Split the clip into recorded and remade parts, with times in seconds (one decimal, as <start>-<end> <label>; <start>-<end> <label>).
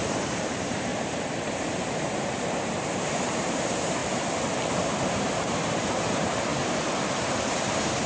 0.0-4.0 remade; 4.0-5.0 recorded; 5.0-6.5 remade; 6.5-7.2 recorded; 7.2-8.1 remade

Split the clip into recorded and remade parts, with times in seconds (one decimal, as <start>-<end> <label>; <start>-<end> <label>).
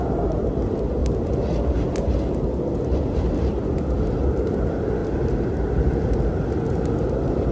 0.0-5.0 recorded; 5.0-6.4 remade; 6.4-7.5 recorded